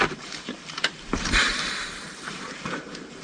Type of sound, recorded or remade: remade